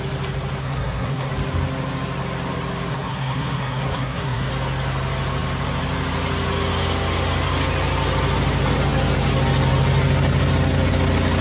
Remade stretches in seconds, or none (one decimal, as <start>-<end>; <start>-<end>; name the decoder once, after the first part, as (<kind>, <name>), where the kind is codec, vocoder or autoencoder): 0.6-1.3 (codec, SNAC); 2.9-4.5